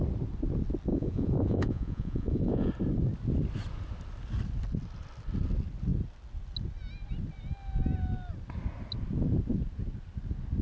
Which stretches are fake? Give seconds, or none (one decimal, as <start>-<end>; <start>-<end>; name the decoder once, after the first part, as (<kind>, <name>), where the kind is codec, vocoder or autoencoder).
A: 0.9-2.7 (vocoder, Vocos)